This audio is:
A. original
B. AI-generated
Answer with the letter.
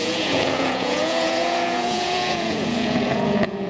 B